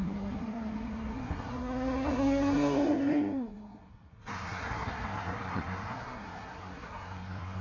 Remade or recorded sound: remade